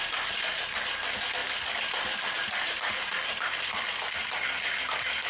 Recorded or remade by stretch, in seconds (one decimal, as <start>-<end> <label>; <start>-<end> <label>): 0.0-5.3 recorded